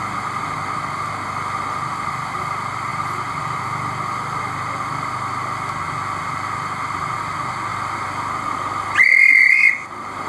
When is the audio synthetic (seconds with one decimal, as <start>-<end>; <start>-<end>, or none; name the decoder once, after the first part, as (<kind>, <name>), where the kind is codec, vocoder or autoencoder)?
none